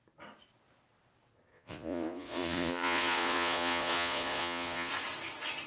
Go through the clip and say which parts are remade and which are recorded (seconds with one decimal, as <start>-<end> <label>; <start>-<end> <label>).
0.0-1.5 recorded; 1.5-4.9 remade; 4.9-5.7 recorded